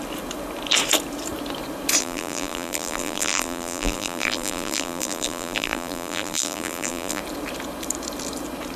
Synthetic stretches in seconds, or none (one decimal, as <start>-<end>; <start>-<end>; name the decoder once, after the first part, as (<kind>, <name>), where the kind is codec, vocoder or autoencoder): 2.0-7.2 (vocoder, BigVGAN v2)